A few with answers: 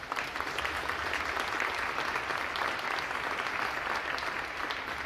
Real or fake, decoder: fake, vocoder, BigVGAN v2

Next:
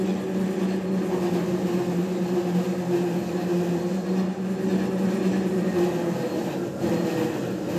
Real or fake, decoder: real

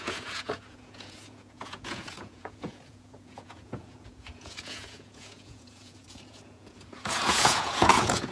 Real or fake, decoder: fake, vocoder, Vocos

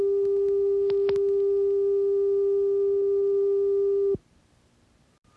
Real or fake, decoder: real